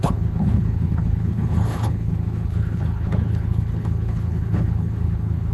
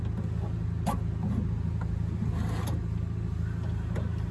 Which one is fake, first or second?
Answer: first